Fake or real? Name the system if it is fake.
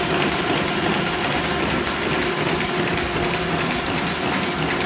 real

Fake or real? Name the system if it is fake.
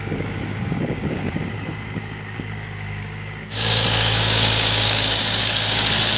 fake, codec, DAC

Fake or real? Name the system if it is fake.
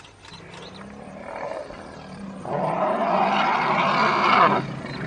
real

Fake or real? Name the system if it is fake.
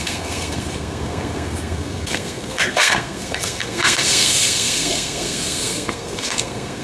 fake, codec, SNAC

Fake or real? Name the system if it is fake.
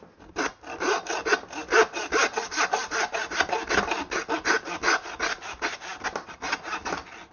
real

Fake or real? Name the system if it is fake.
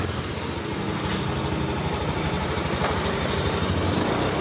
real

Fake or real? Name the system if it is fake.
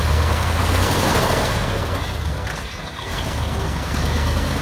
fake, codec, SNAC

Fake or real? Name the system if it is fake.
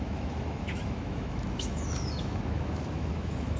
fake, autoencoder, DAC-VAE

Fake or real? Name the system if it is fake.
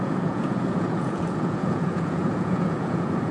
fake, vocoder, Vocos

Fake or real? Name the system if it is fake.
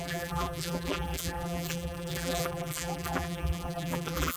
fake, vocoder, BigVGAN v2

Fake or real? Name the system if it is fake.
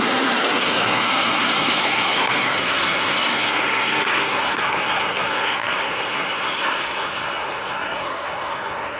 fake, codec, SNAC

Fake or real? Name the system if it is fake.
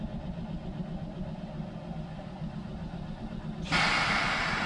real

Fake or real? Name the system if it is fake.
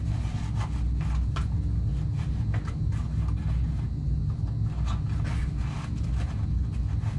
real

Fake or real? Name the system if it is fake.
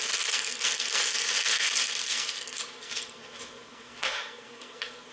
fake, codec, SNAC